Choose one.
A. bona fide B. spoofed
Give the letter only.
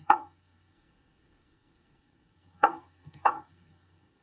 B